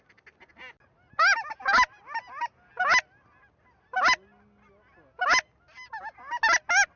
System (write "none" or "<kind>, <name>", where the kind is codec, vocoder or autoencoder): none